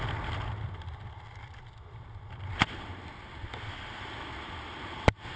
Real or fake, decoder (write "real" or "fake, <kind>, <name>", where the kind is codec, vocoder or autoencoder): real